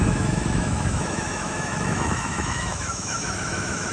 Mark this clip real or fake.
fake